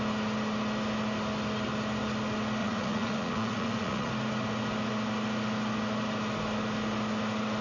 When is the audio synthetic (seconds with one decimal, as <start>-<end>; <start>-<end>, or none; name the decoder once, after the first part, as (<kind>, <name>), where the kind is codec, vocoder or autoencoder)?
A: 2.6-4.1 (vocoder, Vocos)